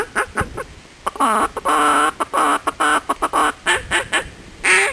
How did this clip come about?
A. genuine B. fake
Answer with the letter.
A